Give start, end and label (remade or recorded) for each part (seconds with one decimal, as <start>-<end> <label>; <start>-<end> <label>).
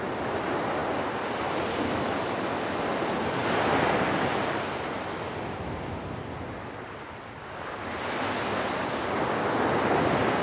0.0-10.4 recorded